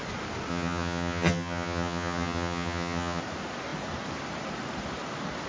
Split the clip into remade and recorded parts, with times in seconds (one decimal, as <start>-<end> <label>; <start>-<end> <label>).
0.0-0.5 recorded; 0.5-3.2 remade; 3.2-5.5 recorded